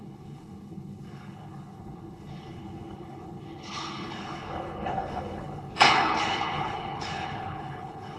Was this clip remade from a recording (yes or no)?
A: yes